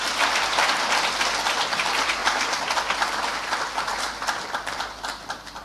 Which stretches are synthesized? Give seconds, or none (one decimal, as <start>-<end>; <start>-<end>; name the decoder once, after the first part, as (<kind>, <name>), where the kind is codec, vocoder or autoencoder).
0.0-2.2 (vocoder, BigVGAN v2); 2.8-3.2; 3.9-5.6